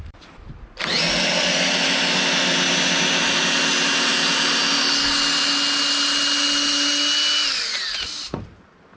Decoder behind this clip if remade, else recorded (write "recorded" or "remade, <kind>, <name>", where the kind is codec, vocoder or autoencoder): recorded